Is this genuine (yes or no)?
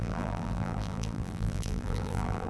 no